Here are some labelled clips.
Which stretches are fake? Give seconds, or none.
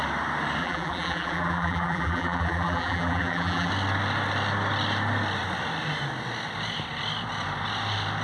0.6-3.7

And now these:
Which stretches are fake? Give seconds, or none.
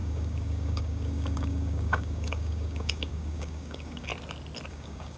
0.0-4.1; 4.7-5.2